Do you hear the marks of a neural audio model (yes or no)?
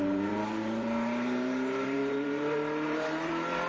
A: yes